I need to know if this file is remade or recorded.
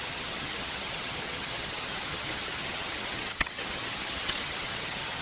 remade